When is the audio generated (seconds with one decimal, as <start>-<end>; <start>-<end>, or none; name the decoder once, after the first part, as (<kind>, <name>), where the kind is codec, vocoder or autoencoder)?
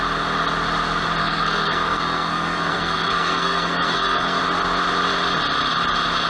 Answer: 1.2-4.4 (codec, SNAC)